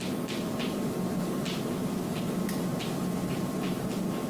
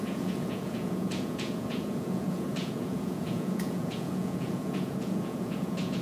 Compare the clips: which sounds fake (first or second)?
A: second